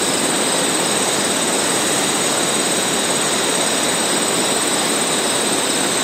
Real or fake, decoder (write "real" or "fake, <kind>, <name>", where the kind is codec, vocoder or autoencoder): real